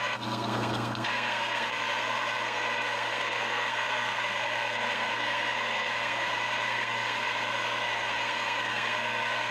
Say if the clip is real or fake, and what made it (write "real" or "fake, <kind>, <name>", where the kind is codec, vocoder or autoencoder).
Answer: fake, codec, SNAC